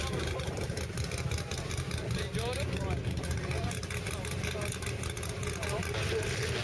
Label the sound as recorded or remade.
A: recorded